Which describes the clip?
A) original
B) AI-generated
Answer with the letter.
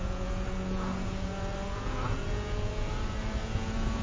B